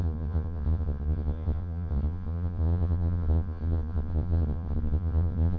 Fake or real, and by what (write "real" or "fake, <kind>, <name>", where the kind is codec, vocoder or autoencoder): fake, vocoder, Vocos